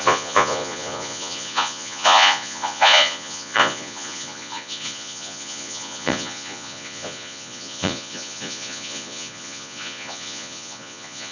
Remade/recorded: remade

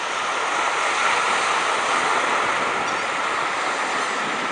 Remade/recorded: recorded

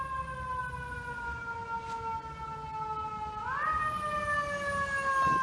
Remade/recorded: recorded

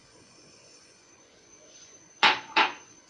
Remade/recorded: remade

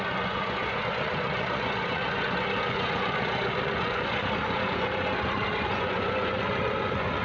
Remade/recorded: remade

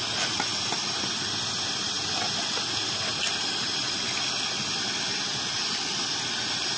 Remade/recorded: recorded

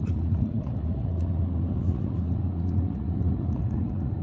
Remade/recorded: remade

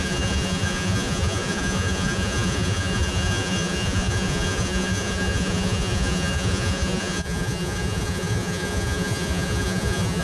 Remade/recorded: remade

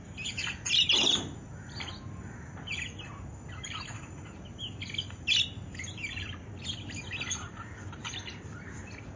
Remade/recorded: recorded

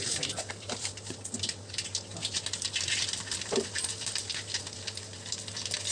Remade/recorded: recorded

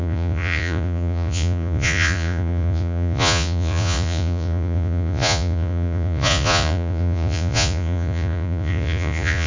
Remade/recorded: remade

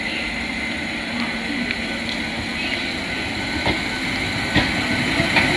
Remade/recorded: recorded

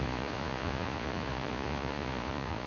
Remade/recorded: remade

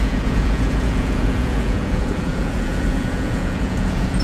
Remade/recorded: remade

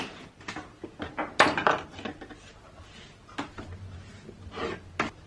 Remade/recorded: recorded